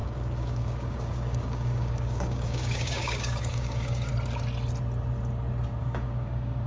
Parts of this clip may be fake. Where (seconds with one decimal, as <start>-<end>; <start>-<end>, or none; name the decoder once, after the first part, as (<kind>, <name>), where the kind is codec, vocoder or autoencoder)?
0.0-4.1 (codec, DAC); 5.8-6.7